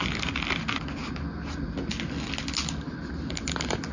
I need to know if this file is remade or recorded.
recorded